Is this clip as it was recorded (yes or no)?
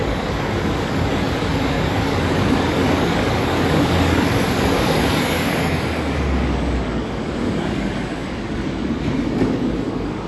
no